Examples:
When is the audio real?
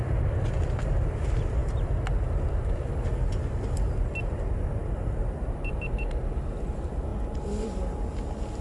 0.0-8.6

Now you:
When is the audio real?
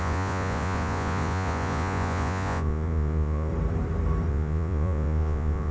3.5-4.3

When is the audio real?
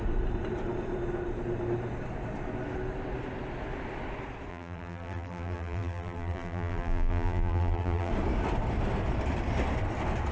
0.0-4.5; 8.1-10.3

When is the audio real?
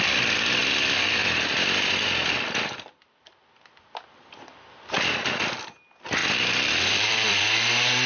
0.0-0.6; 3.1-6.2; 7.4-8.1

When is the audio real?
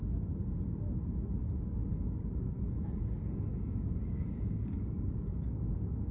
0.0-1.4; 2.6-3.5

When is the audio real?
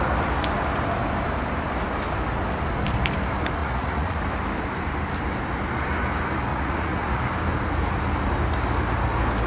0.0-3.6; 4.2-6.5; 7.2-9.5